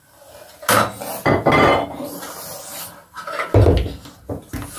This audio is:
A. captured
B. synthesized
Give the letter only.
A